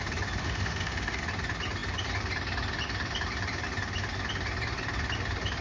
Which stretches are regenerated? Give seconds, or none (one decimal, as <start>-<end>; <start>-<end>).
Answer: 0.4-1.2